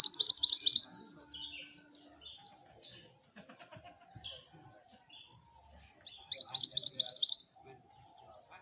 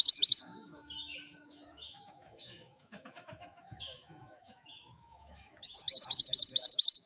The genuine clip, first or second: first